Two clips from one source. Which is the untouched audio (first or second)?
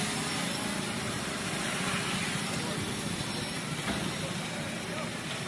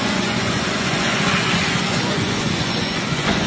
first